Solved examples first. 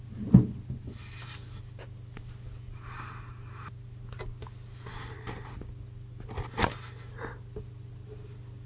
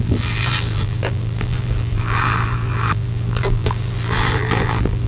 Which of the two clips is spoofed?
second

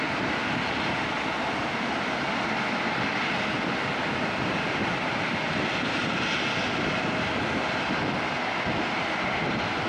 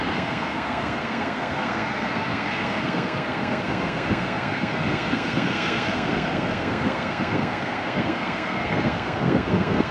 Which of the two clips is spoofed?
second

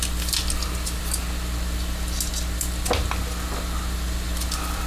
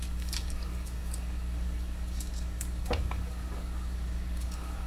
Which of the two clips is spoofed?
second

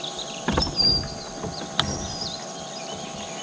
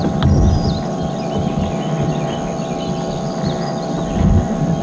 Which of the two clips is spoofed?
first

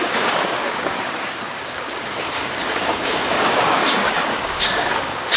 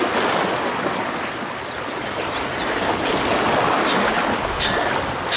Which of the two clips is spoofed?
first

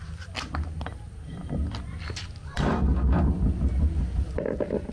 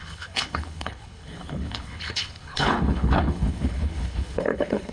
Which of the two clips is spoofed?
second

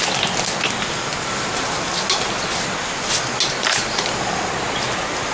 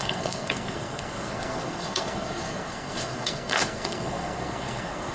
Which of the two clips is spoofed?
second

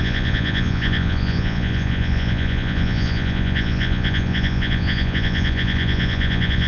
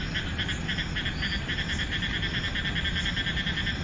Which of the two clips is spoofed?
first